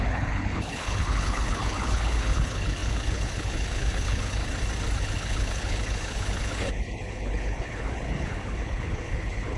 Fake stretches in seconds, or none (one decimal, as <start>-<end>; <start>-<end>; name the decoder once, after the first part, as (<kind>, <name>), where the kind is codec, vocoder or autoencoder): 0.0-4.4 (codec, HILCodec); 5.0-9.6